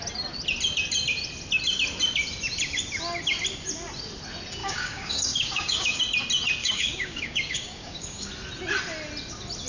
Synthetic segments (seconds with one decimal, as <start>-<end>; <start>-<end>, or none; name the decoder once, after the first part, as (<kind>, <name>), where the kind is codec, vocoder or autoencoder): 4.6-6.0 (codec, DAC); 6.6-8.3